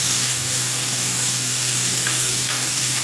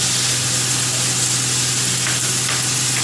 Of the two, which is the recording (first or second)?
second